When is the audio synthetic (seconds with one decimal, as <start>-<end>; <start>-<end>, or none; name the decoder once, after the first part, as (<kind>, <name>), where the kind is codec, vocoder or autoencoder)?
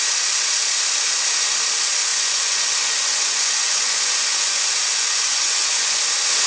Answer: 2.1-6.0 (vocoder, Vocos)